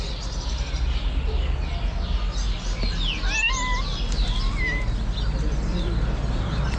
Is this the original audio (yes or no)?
yes